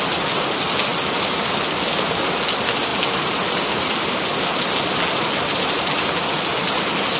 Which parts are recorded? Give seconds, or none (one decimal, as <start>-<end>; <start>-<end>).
0.0-7.2